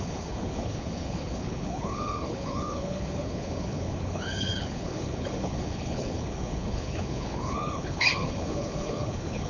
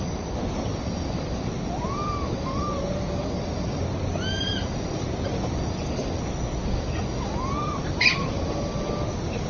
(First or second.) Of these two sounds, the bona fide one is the second